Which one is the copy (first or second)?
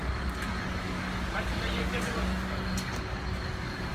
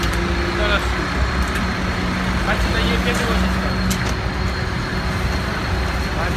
first